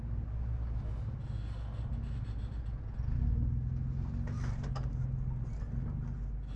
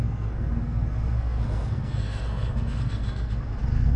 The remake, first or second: second